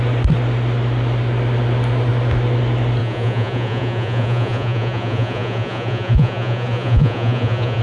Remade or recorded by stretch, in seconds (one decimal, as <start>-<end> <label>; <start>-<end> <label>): 0.0-3.0 recorded; 3.0-7.8 remade